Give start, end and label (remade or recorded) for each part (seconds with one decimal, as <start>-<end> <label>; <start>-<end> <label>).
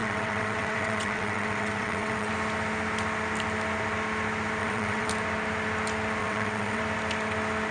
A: 0.0-2.3 remade; 2.3-4.6 recorded; 4.6-5.1 remade; 5.1-6.2 recorded; 6.2-6.8 remade; 6.8-7.7 recorded